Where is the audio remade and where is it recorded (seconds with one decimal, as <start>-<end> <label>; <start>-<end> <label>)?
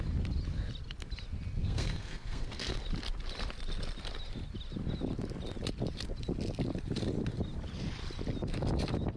0.0-1.6 recorded; 1.6-2.8 remade; 2.8-9.2 recorded